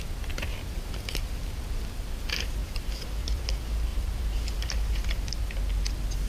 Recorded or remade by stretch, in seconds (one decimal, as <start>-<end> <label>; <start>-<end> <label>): 0.0-0.5 recorded; 0.5-1.4 remade; 1.4-2.6 recorded; 2.6-3.4 remade; 3.4-3.9 recorded; 3.9-5.4 remade; 5.4-6.3 recorded